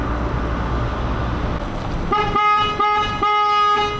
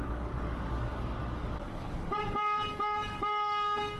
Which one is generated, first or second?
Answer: second